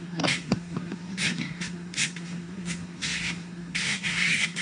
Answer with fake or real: fake